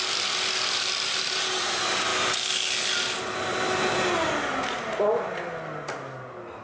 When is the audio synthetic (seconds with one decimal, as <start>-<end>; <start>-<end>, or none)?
none